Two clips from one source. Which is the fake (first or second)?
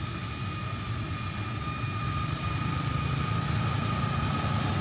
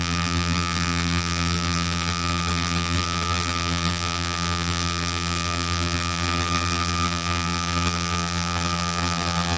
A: second